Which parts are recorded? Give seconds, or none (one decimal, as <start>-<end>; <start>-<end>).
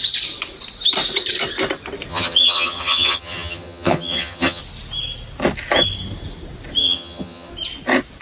0.0-2.1; 4.6-6.8; 7.5-8.2